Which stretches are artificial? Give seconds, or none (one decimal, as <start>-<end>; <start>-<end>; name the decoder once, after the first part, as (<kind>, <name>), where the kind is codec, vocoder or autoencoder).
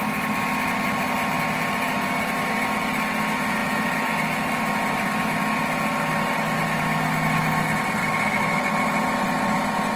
8.0-8.6 (autoencoder, DAC-VAE)